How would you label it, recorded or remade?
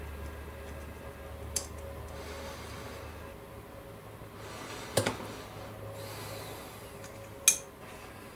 recorded